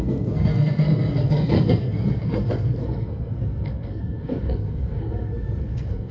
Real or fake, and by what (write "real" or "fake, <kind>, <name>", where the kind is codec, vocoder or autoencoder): fake, codec, SNAC